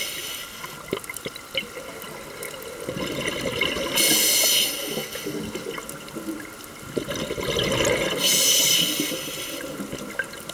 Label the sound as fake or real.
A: real